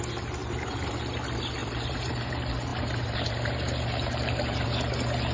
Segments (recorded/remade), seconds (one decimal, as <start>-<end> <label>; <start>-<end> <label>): 0.0-0.4 recorded; 0.4-1.0 remade; 1.0-1.6 recorded; 1.6-2.3 remade; 2.3-2.7 recorded; 2.7-4.7 remade; 4.7-5.3 recorded